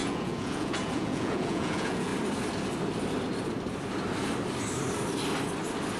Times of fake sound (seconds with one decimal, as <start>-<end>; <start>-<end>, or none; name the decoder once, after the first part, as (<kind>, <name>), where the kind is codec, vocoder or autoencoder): 0.0-2.1 (vocoder, Vocos)